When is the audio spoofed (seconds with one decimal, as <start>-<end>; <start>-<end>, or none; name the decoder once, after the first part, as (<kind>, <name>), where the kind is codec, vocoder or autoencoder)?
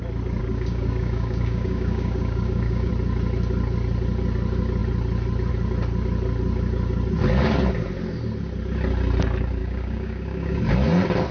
0.4-2.9 (codec, DAC); 9.6-10.6